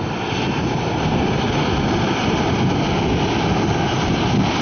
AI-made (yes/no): no